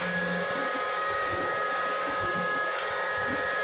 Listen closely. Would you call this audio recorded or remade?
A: remade